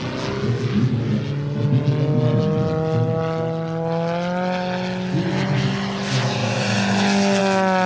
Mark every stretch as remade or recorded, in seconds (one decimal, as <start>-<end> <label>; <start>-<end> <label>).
0.0-7.9 recorded